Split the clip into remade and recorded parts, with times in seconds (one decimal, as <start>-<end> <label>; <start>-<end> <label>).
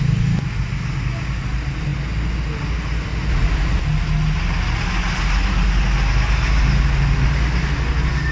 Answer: 0.0-8.3 recorded